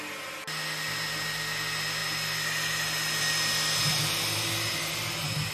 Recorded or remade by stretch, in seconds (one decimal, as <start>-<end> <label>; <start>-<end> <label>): 0.0-5.5 recorded